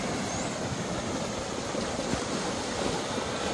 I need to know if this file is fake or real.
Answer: real